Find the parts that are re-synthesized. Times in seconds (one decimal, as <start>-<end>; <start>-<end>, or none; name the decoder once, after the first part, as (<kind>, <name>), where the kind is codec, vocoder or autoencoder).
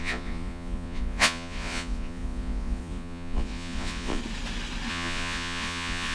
0.0-4.2 (vocoder, Vocos); 4.9-6.1